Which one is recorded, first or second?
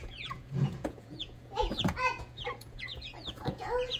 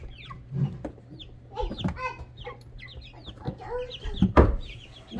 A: second